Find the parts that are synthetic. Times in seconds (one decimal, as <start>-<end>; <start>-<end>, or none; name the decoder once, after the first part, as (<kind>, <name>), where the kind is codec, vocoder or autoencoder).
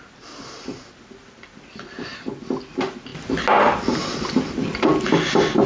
none